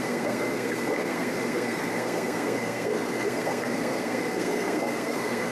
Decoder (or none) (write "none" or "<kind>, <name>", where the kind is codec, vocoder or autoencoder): codec, SNAC